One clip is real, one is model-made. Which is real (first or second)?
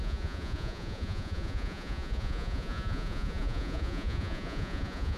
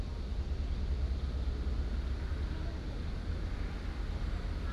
second